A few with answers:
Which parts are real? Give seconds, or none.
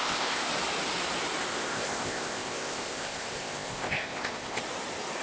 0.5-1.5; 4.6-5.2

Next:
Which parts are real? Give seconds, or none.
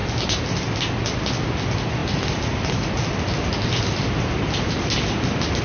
0.0-5.6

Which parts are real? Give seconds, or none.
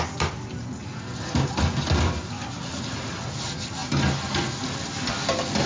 0.0-5.7